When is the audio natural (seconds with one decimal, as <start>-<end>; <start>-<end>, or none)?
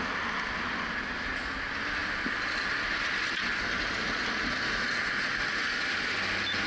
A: 0.0-6.7